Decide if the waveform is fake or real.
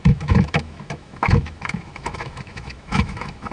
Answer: fake